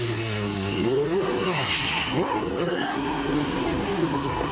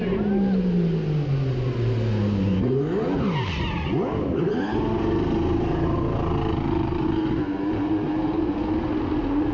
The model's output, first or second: first